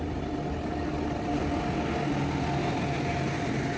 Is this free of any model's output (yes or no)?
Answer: yes